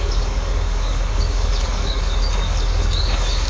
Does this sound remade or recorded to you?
remade